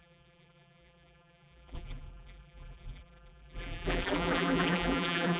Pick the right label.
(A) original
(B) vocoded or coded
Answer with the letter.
B